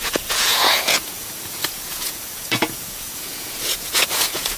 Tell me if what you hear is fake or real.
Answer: fake